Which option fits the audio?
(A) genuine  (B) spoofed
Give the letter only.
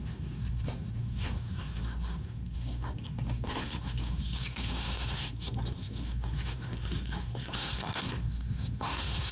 B